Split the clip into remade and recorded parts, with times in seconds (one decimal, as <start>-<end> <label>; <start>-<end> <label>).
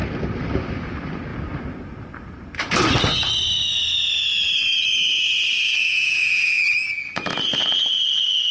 0.0-5.8 recorded; 5.8-7.9 remade; 7.9-8.5 recorded